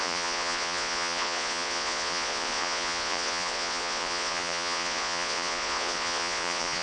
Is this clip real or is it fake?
fake